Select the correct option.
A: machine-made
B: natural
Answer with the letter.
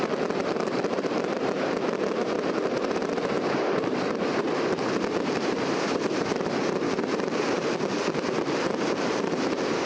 A